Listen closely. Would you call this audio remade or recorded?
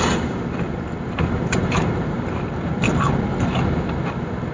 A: recorded